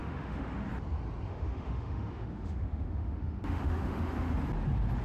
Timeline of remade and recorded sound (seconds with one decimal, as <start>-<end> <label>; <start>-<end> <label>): 0.0-0.5 remade; 0.5-1.3 recorded; 1.3-4.3 remade; 4.3-5.0 recorded